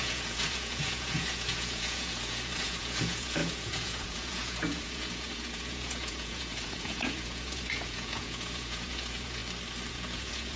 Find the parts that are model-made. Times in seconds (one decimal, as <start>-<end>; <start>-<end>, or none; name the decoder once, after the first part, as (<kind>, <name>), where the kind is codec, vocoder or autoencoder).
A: 0.0-9.4 (vocoder, Vocos); 9.9-10.6